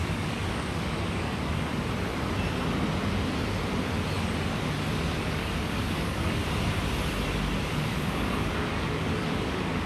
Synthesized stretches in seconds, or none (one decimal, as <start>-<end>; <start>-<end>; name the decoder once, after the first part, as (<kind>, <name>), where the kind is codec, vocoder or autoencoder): 0.0-1.7 (codec, DAC); 5.2-6.4; 7.6-9.9